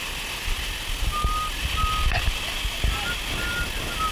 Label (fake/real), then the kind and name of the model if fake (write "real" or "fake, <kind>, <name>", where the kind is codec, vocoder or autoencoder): real